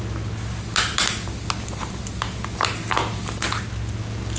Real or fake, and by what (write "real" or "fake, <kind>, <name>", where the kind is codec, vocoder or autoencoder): real